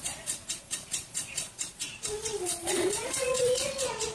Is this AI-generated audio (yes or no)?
yes